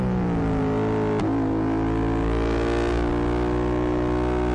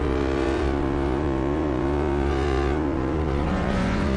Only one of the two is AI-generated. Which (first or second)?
second